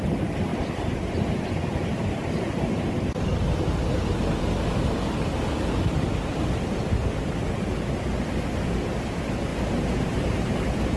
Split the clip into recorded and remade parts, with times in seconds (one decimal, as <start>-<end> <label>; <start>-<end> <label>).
0.0-9.5 remade; 9.5-10.2 recorded; 10.2-11.0 remade